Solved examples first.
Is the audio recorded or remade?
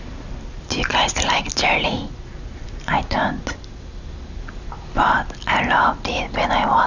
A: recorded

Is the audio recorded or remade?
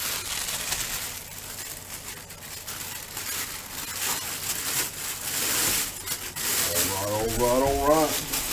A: recorded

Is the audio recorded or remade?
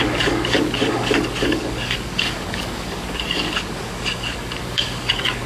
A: remade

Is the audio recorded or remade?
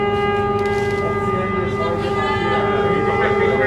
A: recorded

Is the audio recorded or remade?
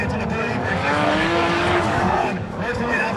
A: remade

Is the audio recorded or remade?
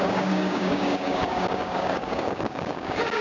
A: remade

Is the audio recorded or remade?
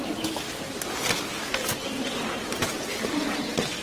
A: recorded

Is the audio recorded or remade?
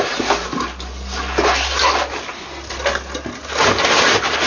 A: recorded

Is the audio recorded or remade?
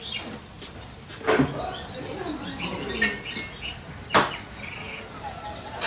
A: recorded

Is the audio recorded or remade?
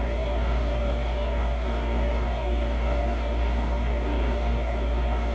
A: remade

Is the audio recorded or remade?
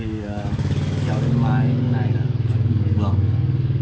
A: remade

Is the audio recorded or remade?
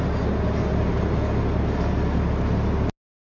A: recorded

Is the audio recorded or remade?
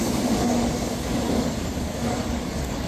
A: remade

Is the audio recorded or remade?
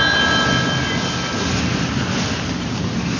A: recorded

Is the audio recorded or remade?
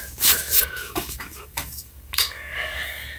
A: remade